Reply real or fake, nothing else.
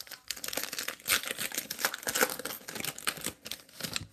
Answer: real